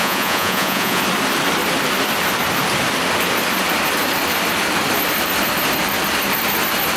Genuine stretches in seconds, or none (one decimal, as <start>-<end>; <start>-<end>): 1.0-7.0